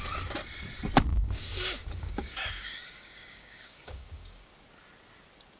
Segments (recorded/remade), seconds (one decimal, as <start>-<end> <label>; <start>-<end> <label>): 0.0-1.1 recorded; 1.1-4.5 remade; 4.5-5.6 recorded